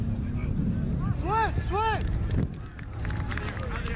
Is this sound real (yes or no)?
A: yes